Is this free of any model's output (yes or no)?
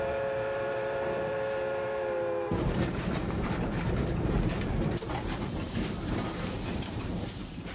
no